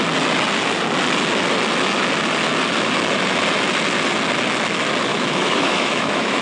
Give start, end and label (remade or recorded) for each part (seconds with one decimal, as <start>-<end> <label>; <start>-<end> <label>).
0.0-5.1 recorded; 5.1-6.4 remade